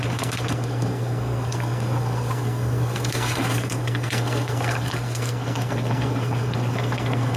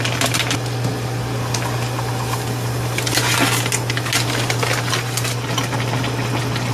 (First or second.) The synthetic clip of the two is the first